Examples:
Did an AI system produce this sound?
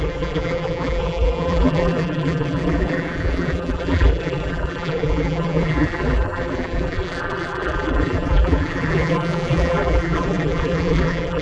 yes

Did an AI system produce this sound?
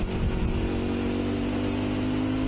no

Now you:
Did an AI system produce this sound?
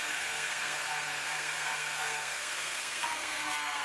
yes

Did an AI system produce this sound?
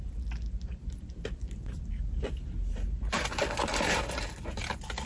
no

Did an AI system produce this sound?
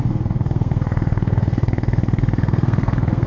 yes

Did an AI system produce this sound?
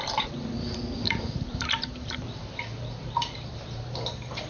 yes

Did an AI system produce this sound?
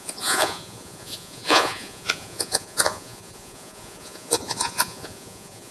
yes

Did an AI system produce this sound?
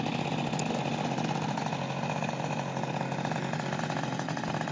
no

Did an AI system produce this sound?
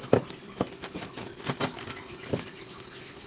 no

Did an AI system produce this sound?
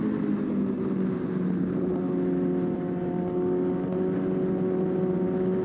no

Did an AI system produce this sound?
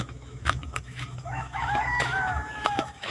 yes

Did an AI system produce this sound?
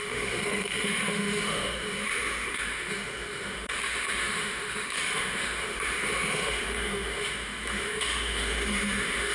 yes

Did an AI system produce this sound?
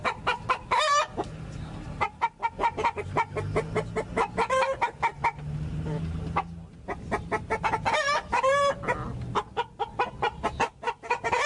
no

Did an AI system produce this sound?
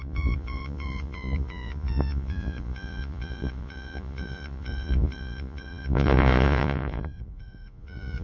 yes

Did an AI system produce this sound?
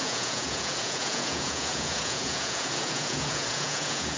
yes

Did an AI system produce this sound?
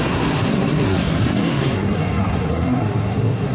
yes